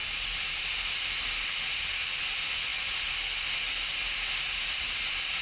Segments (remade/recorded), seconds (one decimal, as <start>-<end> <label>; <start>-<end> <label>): 0.0-2.1 remade; 2.1-5.4 recorded